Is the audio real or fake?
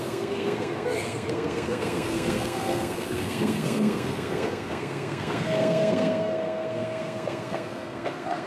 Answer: fake